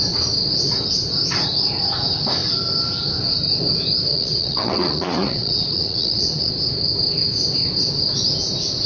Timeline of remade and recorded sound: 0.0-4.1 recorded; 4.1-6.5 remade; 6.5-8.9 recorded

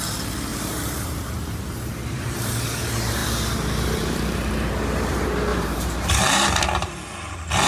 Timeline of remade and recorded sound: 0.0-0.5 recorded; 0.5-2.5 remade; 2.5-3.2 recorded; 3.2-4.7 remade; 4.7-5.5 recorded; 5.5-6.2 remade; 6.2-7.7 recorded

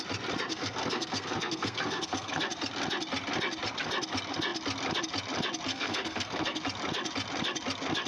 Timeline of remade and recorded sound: 0.0-0.5 recorded; 0.5-2.4 remade; 2.4-5.7 recorded; 5.7-6.6 remade; 6.6-8.1 recorded

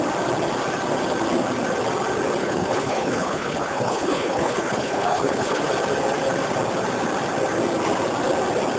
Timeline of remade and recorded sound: 0.0-2.4 recorded; 2.4-5.6 remade; 5.6-8.8 recorded